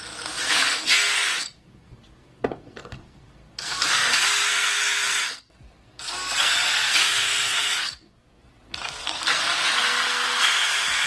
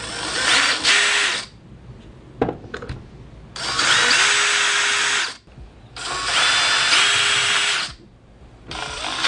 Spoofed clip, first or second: first